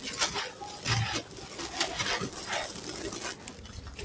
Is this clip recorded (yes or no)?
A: yes